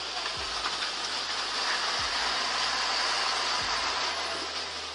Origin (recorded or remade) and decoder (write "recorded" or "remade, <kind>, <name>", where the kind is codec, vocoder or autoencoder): recorded